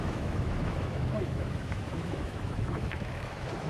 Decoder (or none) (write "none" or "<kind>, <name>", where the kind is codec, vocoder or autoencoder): autoencoder, DAC-VAE